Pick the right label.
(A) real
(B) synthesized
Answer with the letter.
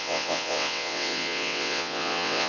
B